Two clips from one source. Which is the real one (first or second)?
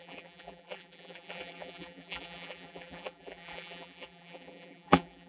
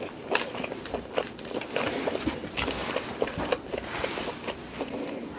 second